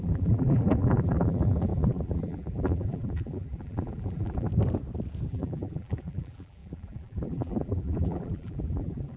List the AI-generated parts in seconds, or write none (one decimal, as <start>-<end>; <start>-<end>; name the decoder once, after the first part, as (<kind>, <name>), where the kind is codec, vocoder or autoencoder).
0.0-4.5 (vocoder, BigVGAN v2); 5.3-9.2

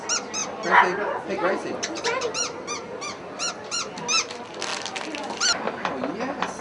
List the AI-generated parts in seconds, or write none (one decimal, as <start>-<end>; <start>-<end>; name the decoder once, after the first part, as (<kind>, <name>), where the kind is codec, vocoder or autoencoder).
none

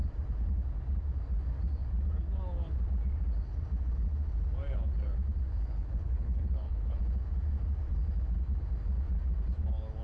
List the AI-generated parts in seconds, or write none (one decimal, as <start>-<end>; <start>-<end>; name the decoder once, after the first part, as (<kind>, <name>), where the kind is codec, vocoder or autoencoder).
5.5-7.0 (codec, HILCodec)

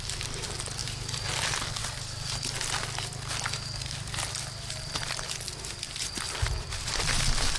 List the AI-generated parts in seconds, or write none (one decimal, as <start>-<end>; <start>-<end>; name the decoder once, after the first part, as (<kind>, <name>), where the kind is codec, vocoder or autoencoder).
none

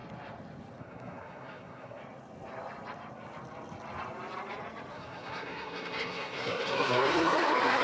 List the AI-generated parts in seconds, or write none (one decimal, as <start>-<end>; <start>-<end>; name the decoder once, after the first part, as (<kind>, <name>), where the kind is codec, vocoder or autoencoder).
0.8-2.0 (codec, SNAC); 4.9-7.8

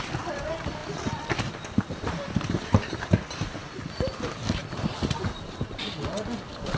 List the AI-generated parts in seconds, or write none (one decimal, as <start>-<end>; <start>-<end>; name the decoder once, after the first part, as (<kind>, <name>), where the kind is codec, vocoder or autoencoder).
none

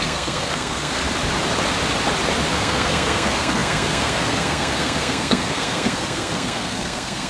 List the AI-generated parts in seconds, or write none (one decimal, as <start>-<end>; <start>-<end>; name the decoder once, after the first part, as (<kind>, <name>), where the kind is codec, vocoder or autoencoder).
0.0-1.0 (codec, SNAC); 2.5-7.3